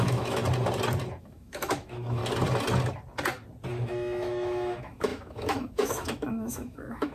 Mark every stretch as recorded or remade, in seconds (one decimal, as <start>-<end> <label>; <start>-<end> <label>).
0.0-0.4 remade; 0.4-1.2 recorded; 1.2-2.2 remade; 2.2-3.7 recorded; 3.7-7.1 remade